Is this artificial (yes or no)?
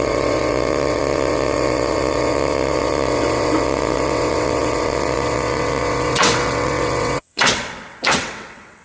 yes